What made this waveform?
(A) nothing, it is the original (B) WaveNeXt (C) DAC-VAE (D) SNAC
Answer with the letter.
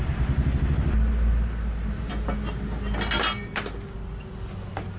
A